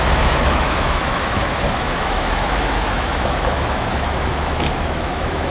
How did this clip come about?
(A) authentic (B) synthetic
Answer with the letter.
B